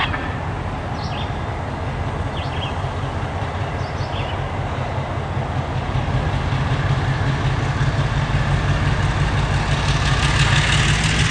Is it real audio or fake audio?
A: real